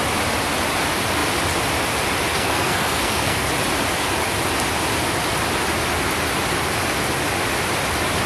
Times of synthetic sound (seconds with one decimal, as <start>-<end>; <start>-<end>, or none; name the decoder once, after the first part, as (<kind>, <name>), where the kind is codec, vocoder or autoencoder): 2.3-3.5 (codec, SNAC)